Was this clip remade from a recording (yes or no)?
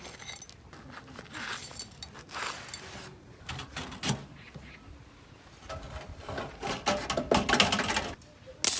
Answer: no